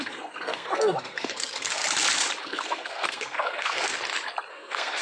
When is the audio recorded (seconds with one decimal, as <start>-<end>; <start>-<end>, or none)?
1.8-2.4; 3.9-4.5